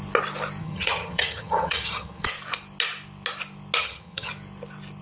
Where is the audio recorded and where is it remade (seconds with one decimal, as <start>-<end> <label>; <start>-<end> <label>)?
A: 0.0-0.6 recorded; 0.6-2.3 remade; 2.3-3.8 recorded; 3.8-4.3 remade; 4.3-5.0 recorded